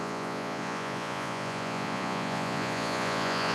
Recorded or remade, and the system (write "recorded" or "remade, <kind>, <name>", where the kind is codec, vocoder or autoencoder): remade, vocoder, Vocos